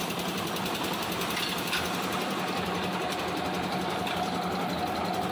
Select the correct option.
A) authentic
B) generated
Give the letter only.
A